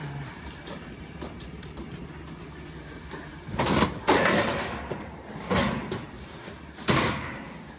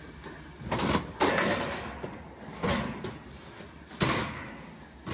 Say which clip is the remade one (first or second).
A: first